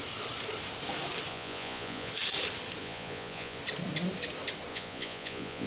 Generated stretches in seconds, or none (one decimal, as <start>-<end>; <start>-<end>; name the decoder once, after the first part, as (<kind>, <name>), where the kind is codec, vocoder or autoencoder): 1.3-2.1 (vocoder, Vocos); 2.8-3.6; 4.7-5.7